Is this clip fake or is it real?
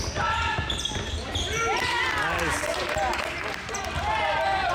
real